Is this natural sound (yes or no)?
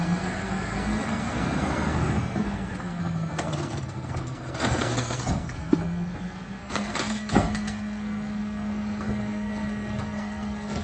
no